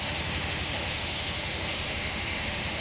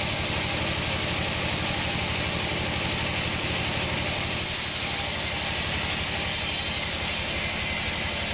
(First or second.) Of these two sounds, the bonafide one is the second